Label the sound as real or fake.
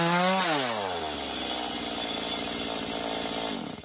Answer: real